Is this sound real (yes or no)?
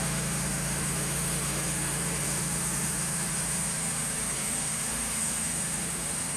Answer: no